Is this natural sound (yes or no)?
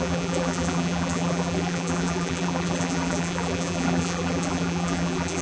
no